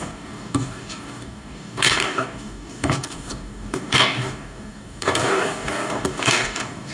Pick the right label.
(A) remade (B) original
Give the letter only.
A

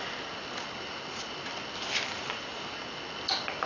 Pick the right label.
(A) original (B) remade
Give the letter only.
A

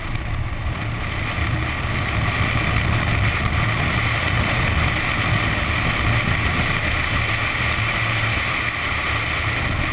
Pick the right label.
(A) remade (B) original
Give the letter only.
B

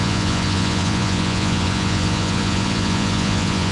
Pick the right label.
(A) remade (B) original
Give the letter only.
A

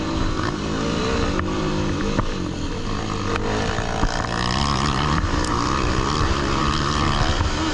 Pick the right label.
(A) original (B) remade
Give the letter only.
A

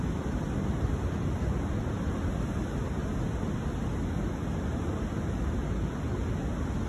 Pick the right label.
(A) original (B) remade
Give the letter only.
A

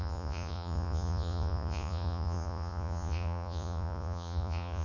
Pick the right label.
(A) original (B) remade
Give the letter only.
B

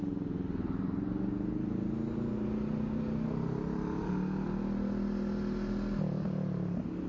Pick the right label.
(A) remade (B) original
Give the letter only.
B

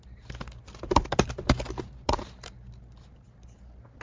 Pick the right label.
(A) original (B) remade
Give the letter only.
A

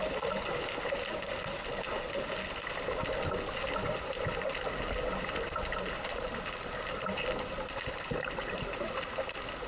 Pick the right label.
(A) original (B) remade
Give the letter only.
A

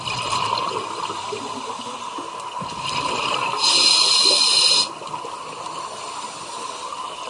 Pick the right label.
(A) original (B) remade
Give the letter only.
A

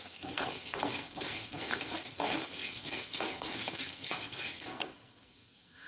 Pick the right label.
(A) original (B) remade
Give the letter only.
B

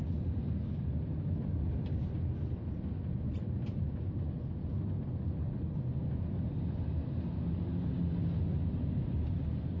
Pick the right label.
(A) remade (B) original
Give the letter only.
B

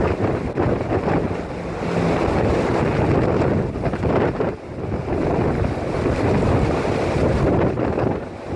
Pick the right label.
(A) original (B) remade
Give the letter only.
A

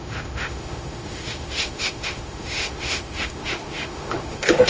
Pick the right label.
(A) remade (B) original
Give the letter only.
A